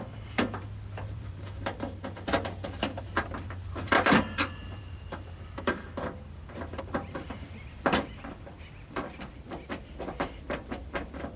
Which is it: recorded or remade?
remade